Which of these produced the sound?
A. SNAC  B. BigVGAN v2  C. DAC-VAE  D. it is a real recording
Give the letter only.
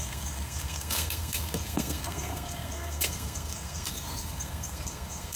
A